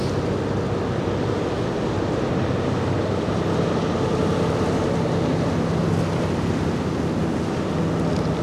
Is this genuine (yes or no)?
yes